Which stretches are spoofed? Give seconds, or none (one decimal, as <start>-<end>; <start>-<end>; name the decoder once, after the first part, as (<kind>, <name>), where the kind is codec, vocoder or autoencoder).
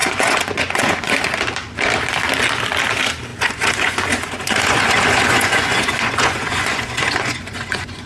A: 0.0-1.2 (vocoder, Vocos); 3.3-8.1